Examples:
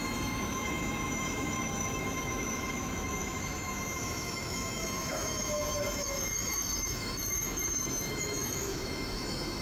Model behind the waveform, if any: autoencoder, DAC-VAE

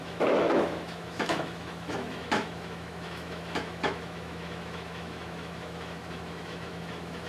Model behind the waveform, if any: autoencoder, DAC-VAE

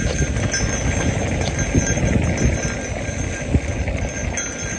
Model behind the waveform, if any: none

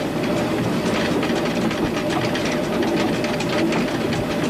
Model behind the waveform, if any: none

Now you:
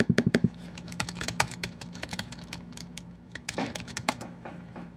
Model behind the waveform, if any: autoencoder, DAC-VAE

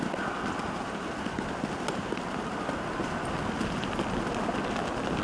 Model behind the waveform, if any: none